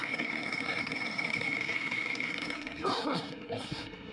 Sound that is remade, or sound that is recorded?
remade